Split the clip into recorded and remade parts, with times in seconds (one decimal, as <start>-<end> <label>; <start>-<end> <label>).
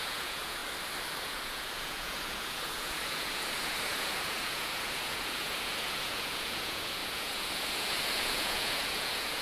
0.0-0.6 remade; 0.6-1.2 recorded; 1.2-9.4 remade